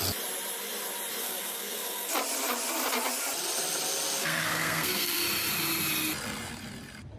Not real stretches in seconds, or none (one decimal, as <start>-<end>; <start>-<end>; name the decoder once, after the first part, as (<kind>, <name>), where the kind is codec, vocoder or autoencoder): 1.2-2.1 (codec, SNAC); 4.2-5.2